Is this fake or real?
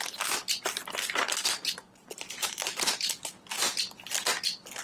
real